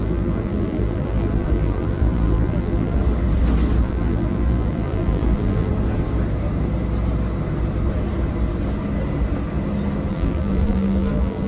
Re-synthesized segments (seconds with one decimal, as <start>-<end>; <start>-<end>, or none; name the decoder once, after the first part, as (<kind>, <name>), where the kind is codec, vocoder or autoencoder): 0.0-3.0 (vocoder, BigVGAN v2); 3.8-5.7; 10.1-11.5